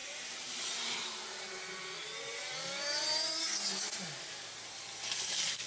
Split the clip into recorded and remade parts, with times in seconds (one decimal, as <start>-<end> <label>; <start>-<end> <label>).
0.0-1.5 remade; 1.5-5.7 recorded